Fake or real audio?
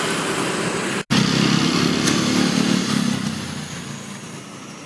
real